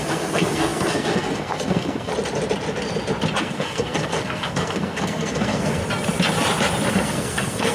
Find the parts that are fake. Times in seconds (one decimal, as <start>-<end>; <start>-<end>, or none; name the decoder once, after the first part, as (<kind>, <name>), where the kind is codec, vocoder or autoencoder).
0.0-2.1 (codec, SNAC); 3.4-5.8; 6.9-7.7